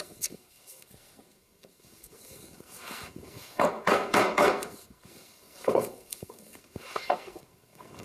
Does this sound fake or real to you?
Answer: fake